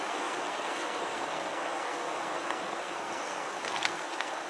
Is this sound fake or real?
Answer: fake